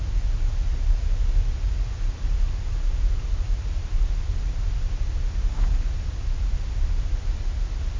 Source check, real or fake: real